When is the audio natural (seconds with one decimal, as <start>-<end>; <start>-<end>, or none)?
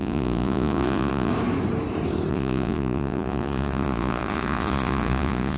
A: 1.3-2.3